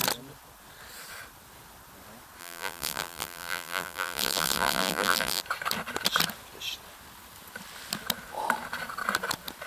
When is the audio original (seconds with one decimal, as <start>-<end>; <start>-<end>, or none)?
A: 0.0-2.4; 5.4-9.7